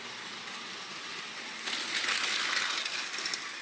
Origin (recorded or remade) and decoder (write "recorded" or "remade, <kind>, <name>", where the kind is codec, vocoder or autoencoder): recorded